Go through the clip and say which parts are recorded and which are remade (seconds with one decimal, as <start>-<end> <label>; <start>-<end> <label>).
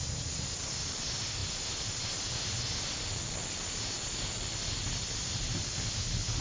0.0-6.4 recorded